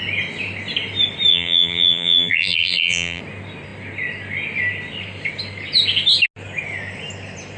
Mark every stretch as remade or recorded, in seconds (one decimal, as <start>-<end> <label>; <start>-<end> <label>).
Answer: 0.0-1.3 recorded; 1.3-3.2 remade; 3.2-7.6 recorded

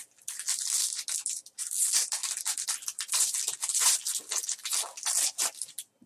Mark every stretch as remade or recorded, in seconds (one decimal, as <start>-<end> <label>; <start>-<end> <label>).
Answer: 0.0-6.1 recorded

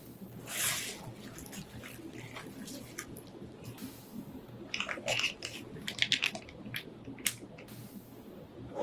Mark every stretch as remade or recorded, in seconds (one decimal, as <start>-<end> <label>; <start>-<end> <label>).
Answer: 0.0-3.8 recorded; 3.8-4.7 remade; 4.7-8.8 recorded

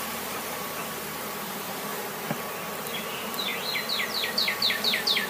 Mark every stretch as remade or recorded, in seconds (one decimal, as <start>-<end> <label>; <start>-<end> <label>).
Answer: 0.0-0.8 remade; 0.8-1.4 recorded; 1.4-1.9 remade; 1.9-3.0 recorded; 3.0-3.5 remade; 3.5-4.7 recorded; 4.7-5.3 remade

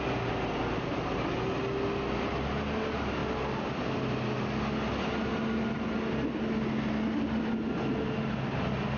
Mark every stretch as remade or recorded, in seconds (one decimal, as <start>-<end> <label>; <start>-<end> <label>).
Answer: 0.0-9.0 recorded